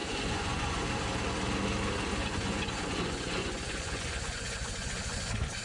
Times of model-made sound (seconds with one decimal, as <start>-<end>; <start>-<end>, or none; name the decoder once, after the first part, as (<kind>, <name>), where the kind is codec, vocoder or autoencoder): 0.0-0.8 (vocoder, Vocos); 2.2-5.6